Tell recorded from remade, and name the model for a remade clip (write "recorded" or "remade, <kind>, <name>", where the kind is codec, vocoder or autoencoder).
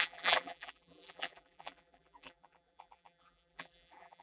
remade, vocoder, BigVGAN v2